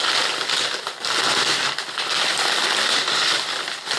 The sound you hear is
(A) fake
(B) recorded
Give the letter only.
B